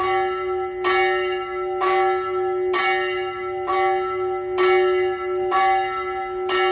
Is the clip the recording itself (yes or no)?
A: yes